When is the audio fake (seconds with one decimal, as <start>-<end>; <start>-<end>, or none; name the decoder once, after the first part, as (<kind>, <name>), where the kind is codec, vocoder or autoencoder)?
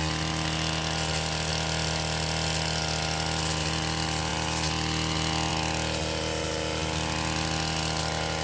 none